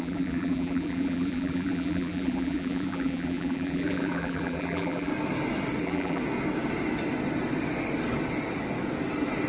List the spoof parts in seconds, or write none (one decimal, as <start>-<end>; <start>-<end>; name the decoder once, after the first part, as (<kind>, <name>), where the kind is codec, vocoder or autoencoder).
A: 0.0-5.1 (vocoder, BigVGAN v2); 5.8-6.2